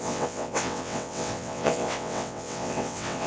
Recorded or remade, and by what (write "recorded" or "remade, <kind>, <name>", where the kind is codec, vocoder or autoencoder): remade, vocoder, WaveNeXt